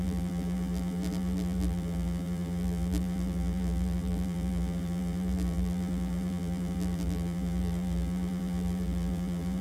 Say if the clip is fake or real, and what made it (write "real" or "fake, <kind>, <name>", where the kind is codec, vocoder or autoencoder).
fake, vocoder, BigVGAN v2